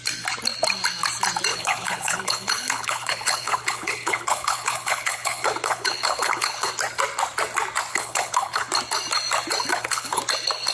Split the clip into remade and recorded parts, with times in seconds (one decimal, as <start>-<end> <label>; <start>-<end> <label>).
0.0-1.5 recorded; 1.5-6.7 remade; 6.7-7.9 recorded; 7.9-8.7 remade; 8.7-9.7 recorded; 9.7-10.2 remade; 10.2-10.7 recorded